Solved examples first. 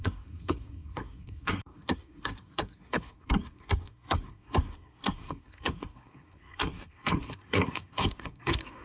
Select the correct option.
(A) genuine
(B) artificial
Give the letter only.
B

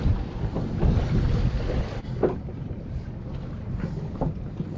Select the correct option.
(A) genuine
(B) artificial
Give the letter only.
A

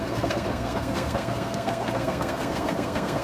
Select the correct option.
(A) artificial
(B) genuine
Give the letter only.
A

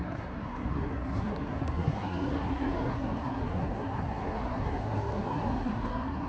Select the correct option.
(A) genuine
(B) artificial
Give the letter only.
B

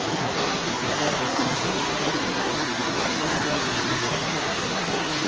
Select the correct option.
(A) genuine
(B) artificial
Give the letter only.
B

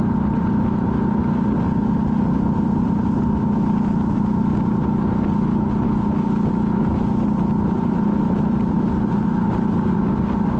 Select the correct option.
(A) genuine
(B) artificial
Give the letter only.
A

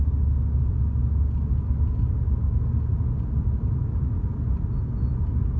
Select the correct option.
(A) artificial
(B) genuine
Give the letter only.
B